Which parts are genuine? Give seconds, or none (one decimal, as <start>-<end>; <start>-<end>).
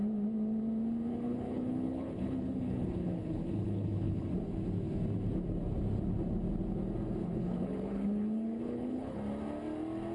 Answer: 0.0-1.1; 4.3-7.2; 9.2-10.1